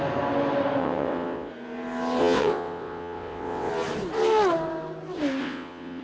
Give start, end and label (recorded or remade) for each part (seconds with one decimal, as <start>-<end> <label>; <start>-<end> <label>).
0.0-0.8 recorded; 0.8-1.5 remade; 1.5-2.2 recorded; 2.2-3.7 remade; 3.7-5.4 recorded; 5.4-6.0 remade